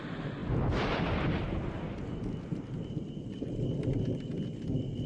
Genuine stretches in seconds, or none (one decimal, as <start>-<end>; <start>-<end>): 0.0-5.1

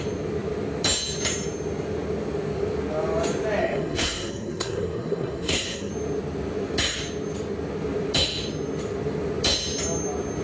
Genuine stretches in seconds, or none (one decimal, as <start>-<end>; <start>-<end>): 0.0-3.6; 5.9-10.4

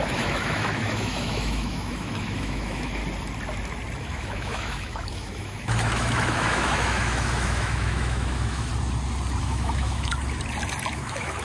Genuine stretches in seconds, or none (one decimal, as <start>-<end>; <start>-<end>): 3.0-4.0; 8.7-9.4; 10.1-10.9

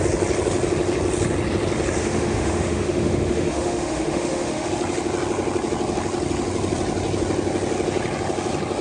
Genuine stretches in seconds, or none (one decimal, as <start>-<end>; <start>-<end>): 0.0-2.0; 4.7-8.8

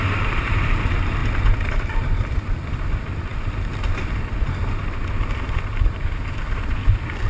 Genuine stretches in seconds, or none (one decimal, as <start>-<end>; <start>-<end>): 3.3-5.5

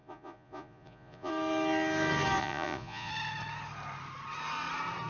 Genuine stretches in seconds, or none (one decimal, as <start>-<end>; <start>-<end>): 1.3-2.4; 3.1-5.1

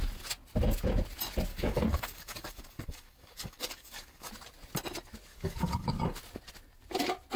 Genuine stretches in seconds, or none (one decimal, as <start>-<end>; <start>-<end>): 0.0-1.5; 4.3-5.3; 5.9-7.4